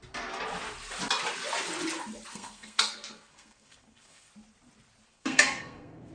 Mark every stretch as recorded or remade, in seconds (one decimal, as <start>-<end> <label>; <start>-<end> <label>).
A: 0.0-2.3 recorded; 2.3-4.3 remade; 4.3-5.1 recorded; 5.1-6.1 remade